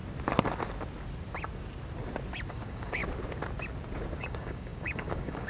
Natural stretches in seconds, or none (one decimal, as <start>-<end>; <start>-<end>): 0.0-2.5; 3.0-4.2